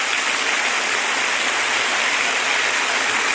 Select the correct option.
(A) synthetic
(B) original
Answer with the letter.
B